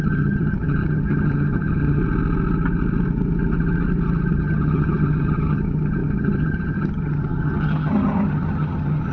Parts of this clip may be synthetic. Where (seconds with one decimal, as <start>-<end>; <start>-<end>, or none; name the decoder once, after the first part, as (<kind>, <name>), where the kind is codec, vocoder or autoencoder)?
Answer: 0.0-2.0 (vocoder, HiFi-GAN); 4.3-9.1